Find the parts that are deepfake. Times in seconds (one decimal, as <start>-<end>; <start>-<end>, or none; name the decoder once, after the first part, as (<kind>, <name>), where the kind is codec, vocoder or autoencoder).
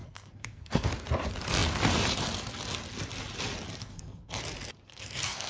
0.0-0.9 (codec, SNAC); 3.8-4.4; 4.9-5.5